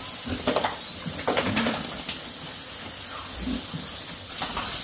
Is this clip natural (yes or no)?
yes